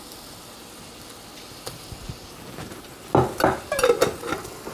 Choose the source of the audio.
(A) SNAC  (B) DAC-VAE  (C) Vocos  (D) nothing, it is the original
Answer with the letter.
D